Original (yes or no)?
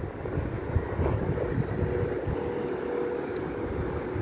yes